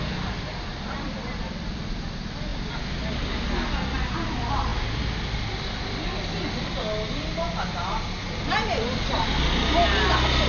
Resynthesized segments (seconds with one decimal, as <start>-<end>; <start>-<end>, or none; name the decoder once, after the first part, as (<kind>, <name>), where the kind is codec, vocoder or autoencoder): none